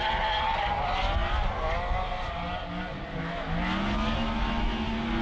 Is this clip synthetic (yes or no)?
no